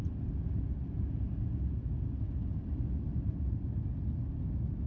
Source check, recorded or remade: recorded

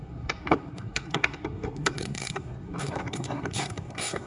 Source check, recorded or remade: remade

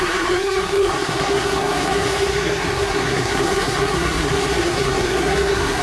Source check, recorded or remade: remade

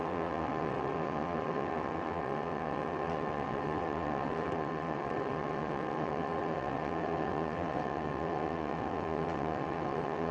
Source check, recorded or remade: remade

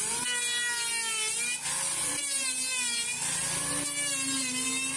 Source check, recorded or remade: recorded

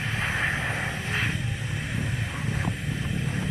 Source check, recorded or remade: recorded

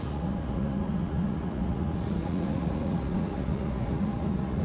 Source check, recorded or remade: remade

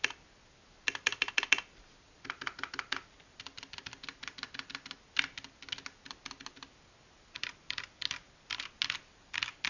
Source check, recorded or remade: recorded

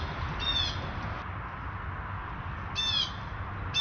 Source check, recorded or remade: recorded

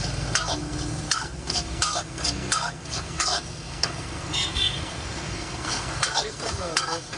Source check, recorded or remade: remade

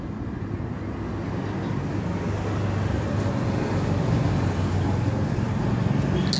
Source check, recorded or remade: recorded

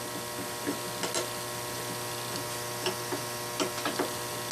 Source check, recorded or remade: recorded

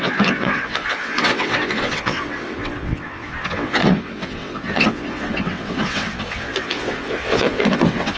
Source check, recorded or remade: remade